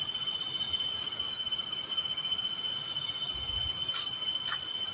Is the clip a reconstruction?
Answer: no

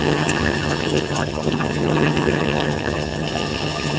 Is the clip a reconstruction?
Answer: yes